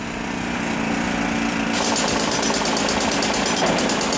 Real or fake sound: real